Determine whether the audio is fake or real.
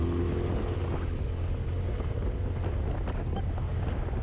real